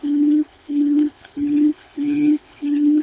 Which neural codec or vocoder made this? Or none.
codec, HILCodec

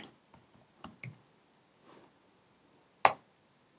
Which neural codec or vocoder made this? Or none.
none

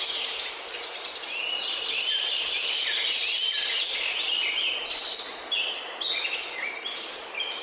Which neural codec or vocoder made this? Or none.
none